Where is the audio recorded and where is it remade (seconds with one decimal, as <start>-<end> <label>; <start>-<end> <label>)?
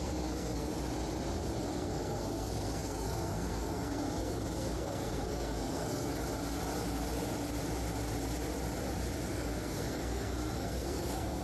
0.0-0.7 remade; 0.7-1.6 recorded; 1.6-6.1 remade; 6.1-9.3 recorded; 9.3-11.4 remade